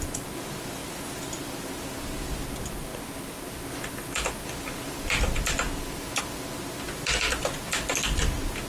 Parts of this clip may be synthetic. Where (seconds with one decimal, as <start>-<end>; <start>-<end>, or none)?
none